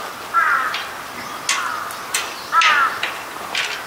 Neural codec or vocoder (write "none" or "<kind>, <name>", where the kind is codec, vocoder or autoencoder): none